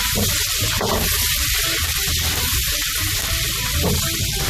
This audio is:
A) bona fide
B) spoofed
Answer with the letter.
A